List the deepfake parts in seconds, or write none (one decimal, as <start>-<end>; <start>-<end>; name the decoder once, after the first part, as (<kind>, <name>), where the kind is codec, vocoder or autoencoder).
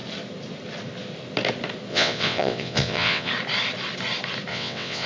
1.9-3.3 (vocoder, WaveNeXt); 4.5-5.1